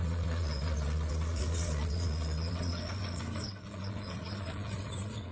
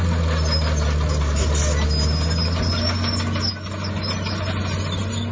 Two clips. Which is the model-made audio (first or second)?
first